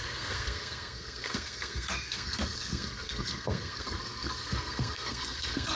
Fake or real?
fake